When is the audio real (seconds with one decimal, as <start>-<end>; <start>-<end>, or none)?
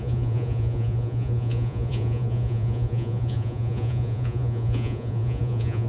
none